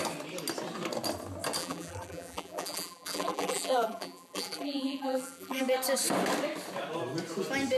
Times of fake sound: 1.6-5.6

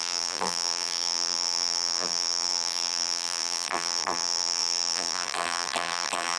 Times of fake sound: 0.0-6.4

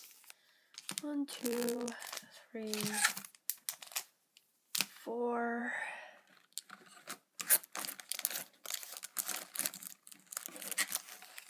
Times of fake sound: 1.4-1.9

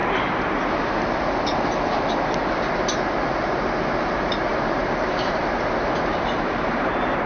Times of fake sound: 4.5-5.4; 6.1-7.3

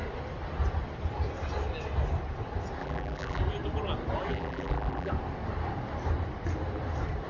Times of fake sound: 2.8-3.4; 4.3-5.1

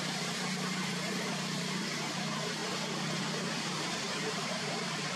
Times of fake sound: 0.0-2.6; 3.2-5.2

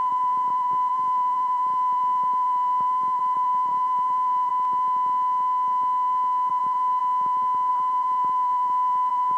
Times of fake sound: 0.0-4.5; 6.5-7.0; 7.7-9.4